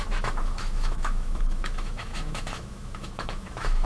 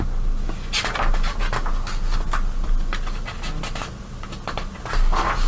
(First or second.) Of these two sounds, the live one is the second